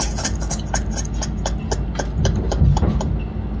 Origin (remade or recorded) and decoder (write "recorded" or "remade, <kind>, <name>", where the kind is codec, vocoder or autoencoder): recorded